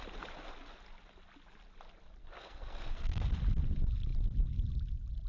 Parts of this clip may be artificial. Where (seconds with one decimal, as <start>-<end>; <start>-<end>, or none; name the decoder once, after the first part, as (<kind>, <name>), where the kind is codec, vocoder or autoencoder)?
2.2-3.3 (codec, SNAC)